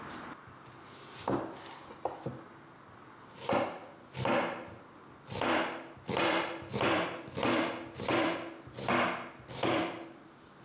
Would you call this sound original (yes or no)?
yes